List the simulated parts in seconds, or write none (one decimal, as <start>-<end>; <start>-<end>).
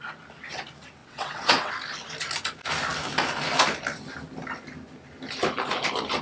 1.0-1.7